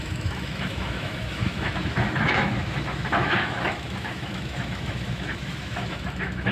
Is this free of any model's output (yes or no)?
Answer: no